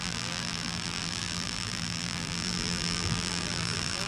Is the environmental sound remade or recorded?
remade